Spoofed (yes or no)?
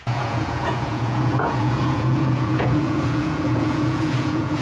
yes